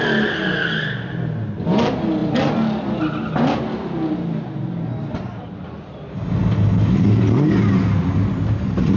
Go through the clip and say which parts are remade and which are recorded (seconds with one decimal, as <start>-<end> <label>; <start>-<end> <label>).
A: 0.0-9.0 recorded